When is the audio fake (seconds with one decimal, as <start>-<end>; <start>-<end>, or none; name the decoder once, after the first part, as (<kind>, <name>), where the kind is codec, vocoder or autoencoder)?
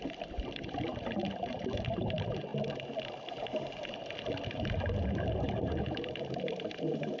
0.0-2.5 (vocoder, BigVGAN v2); 4.2-7.2